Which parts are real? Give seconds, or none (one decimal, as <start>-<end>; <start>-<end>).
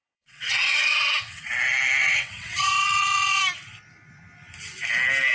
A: 1.5-2.0; 3.4-5.3